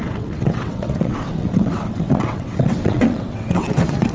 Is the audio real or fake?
fake